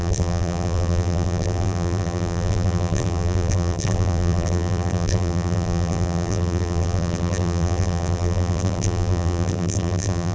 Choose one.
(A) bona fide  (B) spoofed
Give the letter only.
B